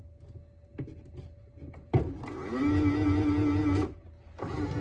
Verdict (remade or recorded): recorded